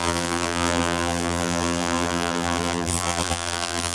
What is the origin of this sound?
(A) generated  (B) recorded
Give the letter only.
A